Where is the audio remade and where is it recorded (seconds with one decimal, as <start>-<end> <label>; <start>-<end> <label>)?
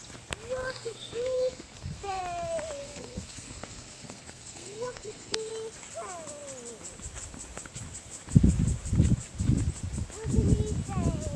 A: 0.0-0.6 recorded; 0.6-2.2 remade; 2.2-2.8 recorded; 2.8-5.5 remade; 5.5-11.4 recorded